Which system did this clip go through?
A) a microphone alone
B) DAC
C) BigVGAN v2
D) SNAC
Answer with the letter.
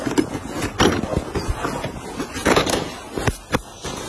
A